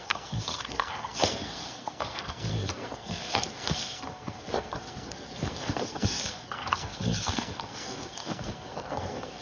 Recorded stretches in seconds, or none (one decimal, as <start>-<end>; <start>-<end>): none